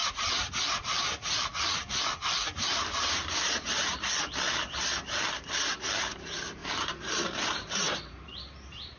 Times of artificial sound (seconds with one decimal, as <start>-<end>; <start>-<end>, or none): 0.0-0.5; 2.7-3.8; 6.6-9.0